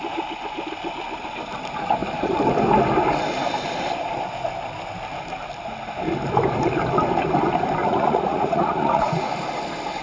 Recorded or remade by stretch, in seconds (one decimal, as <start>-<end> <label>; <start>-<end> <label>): 0.0-7.8 recorded; 7.8-9.3 remade; 9.3-10.0 recorded